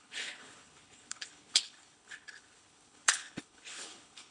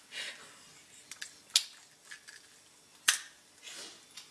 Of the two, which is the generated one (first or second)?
first